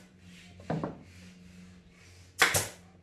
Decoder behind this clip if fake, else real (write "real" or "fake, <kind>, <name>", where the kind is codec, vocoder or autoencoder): real